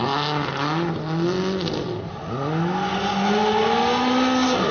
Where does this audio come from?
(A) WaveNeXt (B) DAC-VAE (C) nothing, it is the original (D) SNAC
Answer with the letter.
C